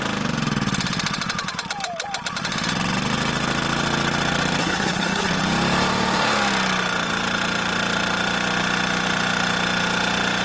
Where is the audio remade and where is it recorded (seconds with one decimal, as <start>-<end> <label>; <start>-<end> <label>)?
0.0-4.6 recorded; 4.6-5.3 remade; 5.3-10.4 recorded